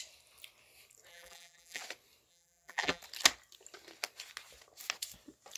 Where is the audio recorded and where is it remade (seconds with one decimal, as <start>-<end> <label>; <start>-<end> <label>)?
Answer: 0.0-1.1 recorded; 1.1-1.8 remade; 1.8-2.3 recorded; 2.3-3.0 remade; 3.0-5.6 recorded